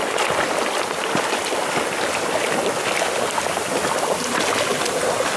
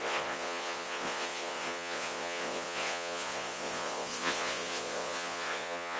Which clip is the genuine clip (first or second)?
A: first